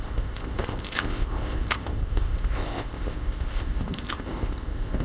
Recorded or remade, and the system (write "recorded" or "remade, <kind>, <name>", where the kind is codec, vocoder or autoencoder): remade, codec, ZipCodec